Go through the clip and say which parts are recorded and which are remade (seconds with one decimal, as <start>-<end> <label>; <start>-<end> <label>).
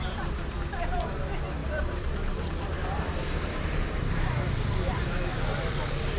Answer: 0.0-1.6 recorded; 1.6-4.0 remade; 4.0-6.2 recorded